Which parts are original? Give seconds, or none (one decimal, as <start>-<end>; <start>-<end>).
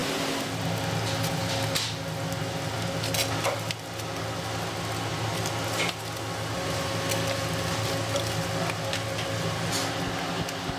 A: 0.0-10.8